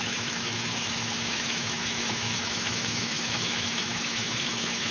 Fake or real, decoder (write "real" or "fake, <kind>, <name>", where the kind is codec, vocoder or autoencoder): fake, autoencoder, DAC-VAE